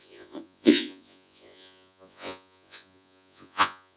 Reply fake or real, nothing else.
fake